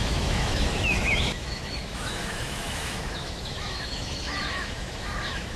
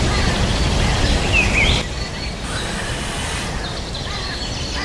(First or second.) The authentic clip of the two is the second